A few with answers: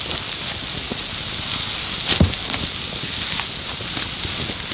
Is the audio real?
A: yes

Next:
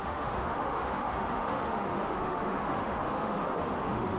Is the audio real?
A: no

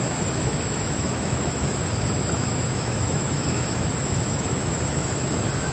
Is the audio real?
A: no